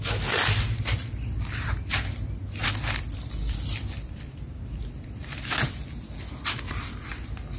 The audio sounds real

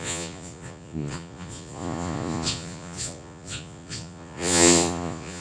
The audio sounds fake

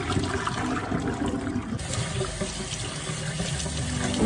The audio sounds real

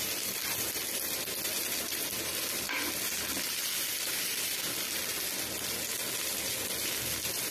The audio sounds real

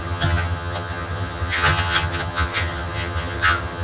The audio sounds fake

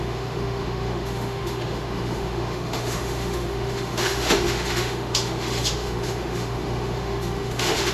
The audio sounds fake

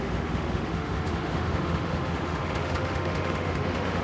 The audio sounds fake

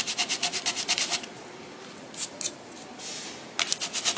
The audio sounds real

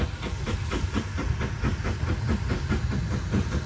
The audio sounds real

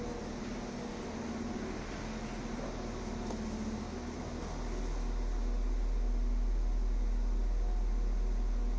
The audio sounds real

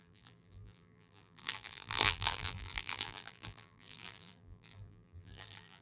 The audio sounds fake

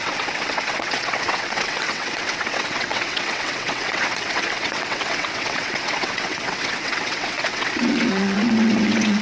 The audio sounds fake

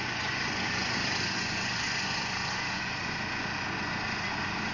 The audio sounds fake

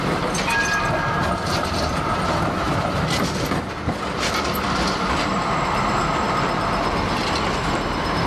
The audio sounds real